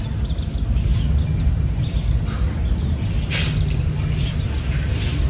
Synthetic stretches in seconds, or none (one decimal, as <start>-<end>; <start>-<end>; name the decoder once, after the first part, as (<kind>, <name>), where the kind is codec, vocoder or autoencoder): none